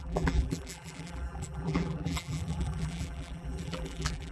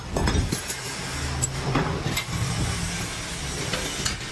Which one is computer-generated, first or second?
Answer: first